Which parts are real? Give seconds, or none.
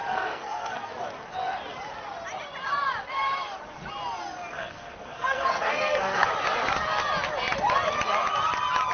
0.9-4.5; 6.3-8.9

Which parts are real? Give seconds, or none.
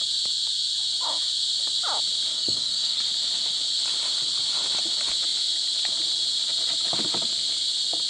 0.0-2.3; 3.0-8.1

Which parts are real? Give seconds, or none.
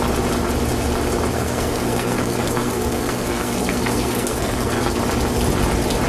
0.0-1.3; 5.0-6.1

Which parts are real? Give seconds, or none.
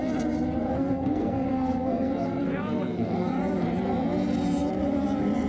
0.0-0.7; 3.4-5.5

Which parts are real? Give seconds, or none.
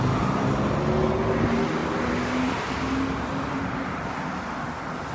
0.0-5.1